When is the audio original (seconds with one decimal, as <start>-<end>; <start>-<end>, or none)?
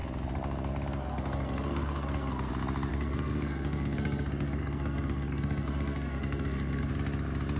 0.0-1.1; 2.5-2.9; 6.9-7.6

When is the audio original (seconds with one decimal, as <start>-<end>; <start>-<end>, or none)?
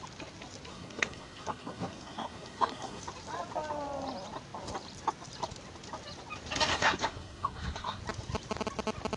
0.0-0.7; 3.0-6.7; 8.0-9.2